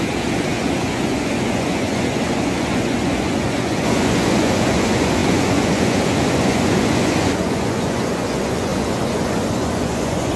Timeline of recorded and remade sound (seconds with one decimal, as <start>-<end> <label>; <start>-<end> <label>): 0.0-10.4 remade